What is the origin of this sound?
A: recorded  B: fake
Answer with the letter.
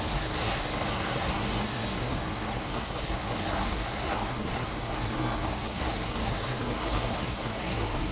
B